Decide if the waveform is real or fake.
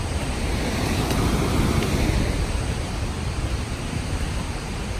real